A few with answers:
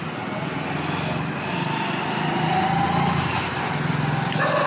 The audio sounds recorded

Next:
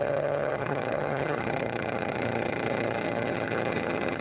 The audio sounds remade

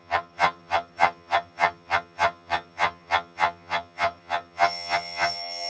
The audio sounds remade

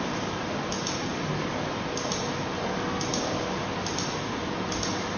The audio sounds recorded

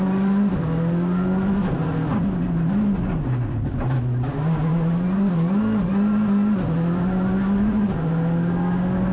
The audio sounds recorded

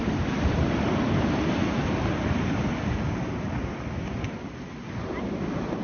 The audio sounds recorded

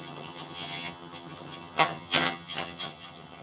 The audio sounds remade